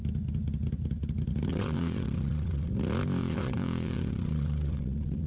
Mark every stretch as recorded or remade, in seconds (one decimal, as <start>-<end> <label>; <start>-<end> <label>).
0.0-1.5 recorded; 1.5-2.7 remade; 2.7-3.2 recorded; 3.2-5.3 remade